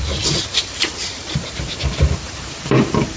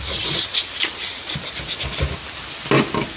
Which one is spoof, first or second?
first